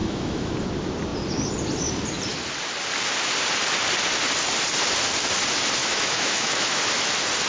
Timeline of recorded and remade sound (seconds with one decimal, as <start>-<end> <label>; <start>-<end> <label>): 0.0-0.5 remade; 0.5-5.8 recorded; 5.8-7.1 remade; 7.1-7.5 recorded